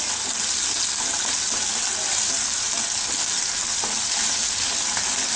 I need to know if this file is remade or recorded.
recorded